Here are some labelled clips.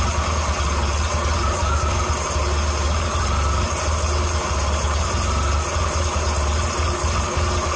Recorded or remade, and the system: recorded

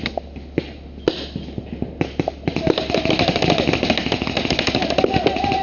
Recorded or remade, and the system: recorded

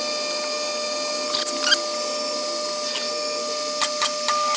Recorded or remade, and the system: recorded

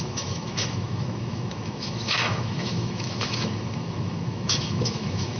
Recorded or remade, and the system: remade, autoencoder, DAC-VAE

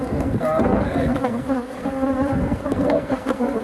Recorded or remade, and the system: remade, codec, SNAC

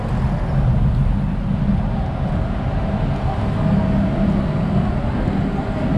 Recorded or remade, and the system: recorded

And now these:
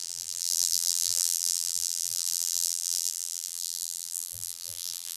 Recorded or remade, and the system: remade, vocoder, BigVGAN v2